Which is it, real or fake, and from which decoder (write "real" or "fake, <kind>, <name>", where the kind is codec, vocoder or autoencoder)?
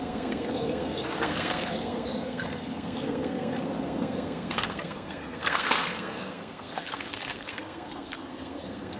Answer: fake, codec, SNAC